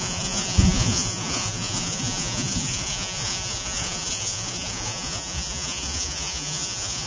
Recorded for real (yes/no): no